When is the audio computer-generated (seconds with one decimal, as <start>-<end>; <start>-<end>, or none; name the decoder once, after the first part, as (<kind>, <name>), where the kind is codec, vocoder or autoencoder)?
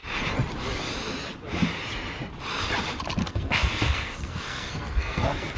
3.2-5.6 (codec, SNAC)